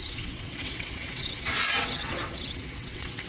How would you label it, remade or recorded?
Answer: remade